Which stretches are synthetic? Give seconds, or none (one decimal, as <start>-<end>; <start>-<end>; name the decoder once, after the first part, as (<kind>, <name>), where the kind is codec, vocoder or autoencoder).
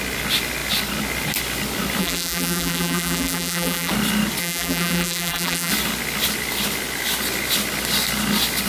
2.0-3.9 (vocoder, BigVGAN v2); 4.4-5.7